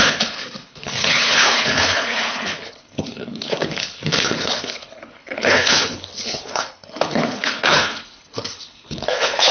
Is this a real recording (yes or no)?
no